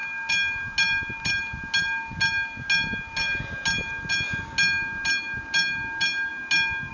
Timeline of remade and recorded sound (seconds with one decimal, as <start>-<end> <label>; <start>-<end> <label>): 0.0-6.9 recorded